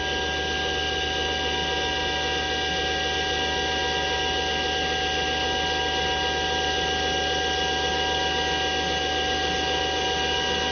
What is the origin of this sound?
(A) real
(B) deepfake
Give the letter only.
A